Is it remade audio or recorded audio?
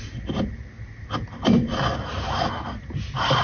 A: recorded